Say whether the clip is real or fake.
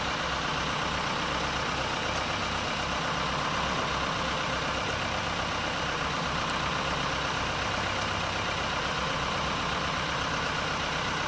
real